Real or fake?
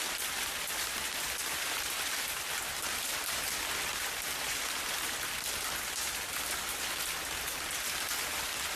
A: real